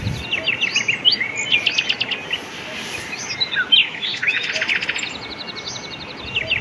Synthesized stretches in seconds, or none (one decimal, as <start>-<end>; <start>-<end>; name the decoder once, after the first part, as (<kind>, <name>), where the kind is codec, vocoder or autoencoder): 3.8-4.5 (autoencoder, DAC-VAE)